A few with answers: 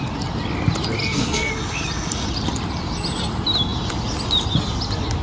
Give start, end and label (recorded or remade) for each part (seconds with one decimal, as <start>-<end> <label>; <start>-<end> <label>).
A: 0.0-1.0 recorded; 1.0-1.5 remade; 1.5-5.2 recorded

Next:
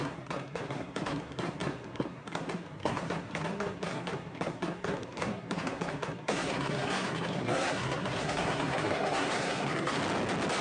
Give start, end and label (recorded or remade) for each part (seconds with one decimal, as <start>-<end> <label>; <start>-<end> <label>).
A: 0.0-10.0 remade; 10.0-10.6 recorded

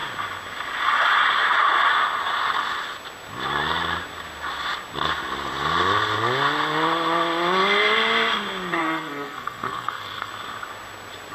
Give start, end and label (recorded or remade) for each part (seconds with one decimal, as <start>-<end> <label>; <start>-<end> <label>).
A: 0.0-8.8 recorded; 8.8-10.3 remade; 10.3-11.3 recorded